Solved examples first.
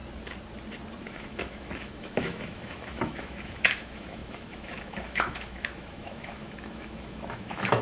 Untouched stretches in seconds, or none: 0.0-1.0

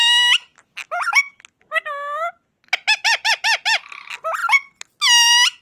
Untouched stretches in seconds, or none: 0.0-5.6

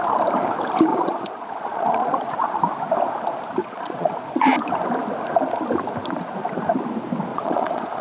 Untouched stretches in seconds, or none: 0.0-0.9; 2.5-3.6; 4.5-7.3

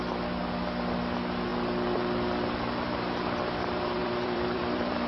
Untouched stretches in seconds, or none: 0.0-4.0

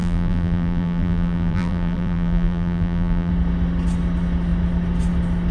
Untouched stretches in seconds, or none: 3.3-5.5

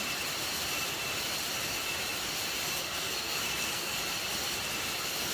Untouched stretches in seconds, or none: 0.0-2.8; 4.0-5.3

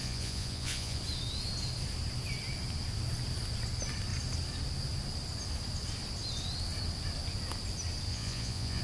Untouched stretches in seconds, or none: 1.0-8.1